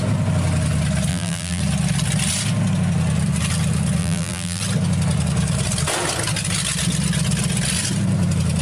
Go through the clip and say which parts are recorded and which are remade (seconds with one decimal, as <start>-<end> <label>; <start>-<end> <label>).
0.0-1.1 recorded; 1.1-1.6 remade; 1.6-4.0 recorded; 4.0-4.6 remade; 4.6-8.6 recorded